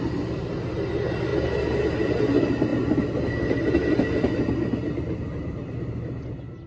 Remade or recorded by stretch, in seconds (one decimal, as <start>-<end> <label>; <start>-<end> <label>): 0.0-6.7 recorded